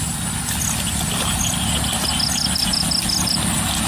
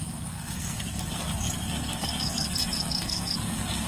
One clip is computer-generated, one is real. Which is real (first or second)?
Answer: first